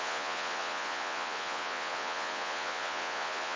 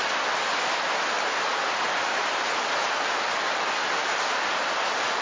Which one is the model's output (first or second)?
first